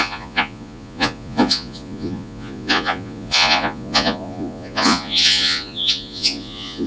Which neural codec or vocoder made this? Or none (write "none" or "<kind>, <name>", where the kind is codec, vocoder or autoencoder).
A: vocoder, Vocos